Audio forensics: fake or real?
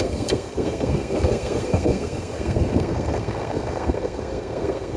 fake